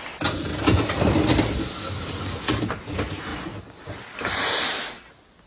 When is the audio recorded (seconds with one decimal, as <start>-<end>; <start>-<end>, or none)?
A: 0.0-5.5